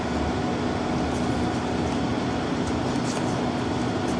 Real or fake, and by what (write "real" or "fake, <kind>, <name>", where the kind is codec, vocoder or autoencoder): real